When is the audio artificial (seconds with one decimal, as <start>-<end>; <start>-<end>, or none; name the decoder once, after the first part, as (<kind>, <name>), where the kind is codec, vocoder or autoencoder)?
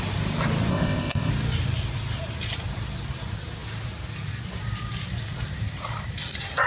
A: 0.7-1.3 (codec, ZipCodec)